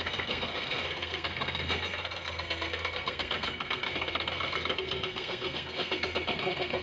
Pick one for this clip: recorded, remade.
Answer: remade